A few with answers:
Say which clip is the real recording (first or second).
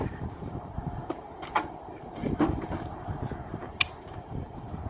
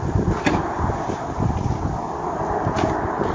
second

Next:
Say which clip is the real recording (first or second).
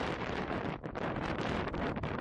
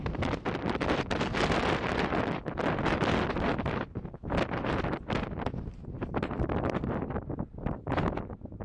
second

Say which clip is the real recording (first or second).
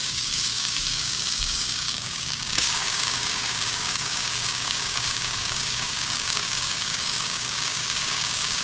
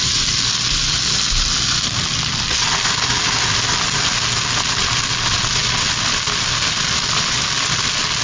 second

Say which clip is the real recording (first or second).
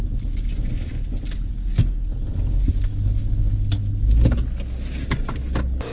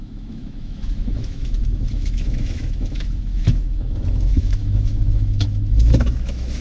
first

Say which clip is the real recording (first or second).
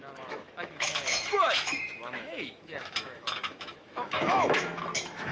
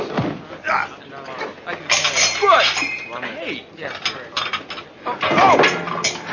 second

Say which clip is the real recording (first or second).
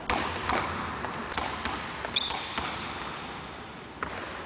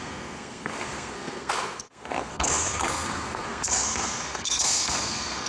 first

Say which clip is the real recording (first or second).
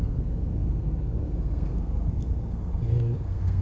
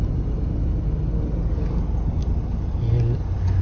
second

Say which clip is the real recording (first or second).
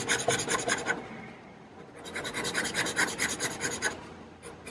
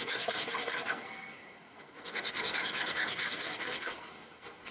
first